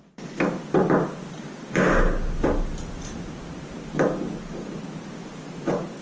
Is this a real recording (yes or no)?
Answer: yes